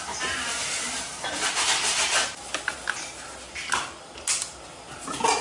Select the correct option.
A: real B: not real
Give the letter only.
A